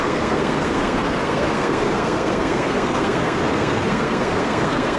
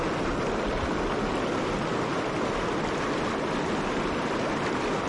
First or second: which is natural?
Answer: second